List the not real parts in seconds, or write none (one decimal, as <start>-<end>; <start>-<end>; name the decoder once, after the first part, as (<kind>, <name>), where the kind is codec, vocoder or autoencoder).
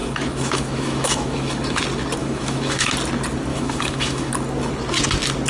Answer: 0.0-1.8 (autoencoder, DAC-VAE); 2.2-2.9; 3.5-4.3